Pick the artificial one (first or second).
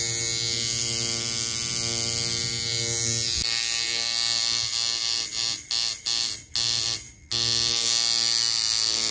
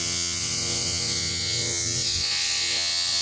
second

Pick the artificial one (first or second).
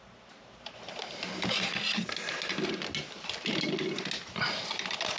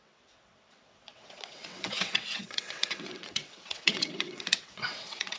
second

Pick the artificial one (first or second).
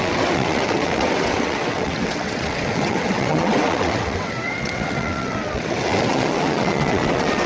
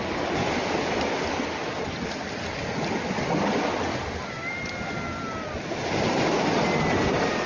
first